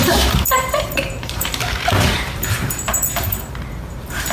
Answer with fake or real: fake